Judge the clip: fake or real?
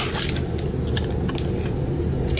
real